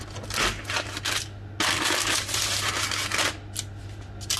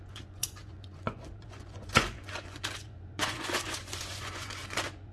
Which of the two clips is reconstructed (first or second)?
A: second